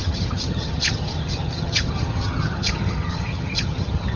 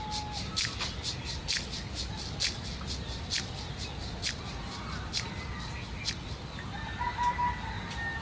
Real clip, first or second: second